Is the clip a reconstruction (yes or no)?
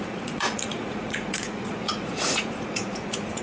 yes